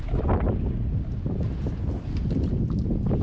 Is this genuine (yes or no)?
yes